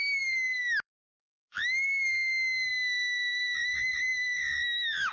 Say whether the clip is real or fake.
fake